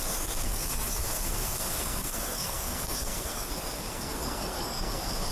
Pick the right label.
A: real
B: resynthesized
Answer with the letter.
B